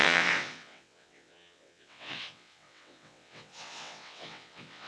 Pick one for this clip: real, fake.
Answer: fake